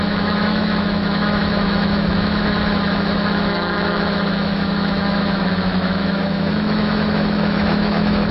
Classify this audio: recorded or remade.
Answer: remade